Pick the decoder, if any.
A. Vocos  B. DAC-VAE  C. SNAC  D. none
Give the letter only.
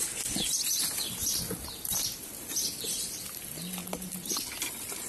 D